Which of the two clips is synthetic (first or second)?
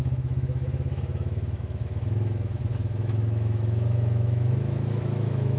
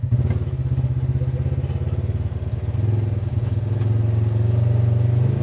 first